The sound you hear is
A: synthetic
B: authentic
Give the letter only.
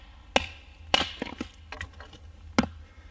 B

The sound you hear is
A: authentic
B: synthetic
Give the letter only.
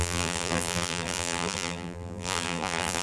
B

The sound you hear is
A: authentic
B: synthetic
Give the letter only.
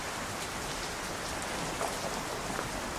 A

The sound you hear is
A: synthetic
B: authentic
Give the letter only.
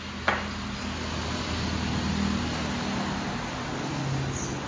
B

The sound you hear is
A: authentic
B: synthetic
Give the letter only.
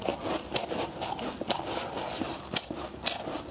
A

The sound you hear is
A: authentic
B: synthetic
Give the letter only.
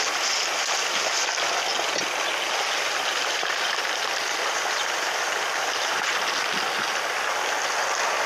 A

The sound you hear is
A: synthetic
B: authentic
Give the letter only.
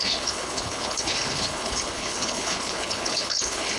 A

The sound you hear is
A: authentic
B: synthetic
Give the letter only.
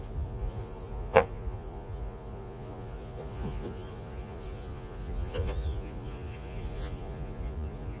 B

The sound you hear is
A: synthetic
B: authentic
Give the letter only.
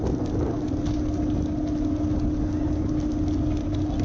B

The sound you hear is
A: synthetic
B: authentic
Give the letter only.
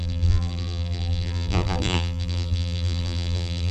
A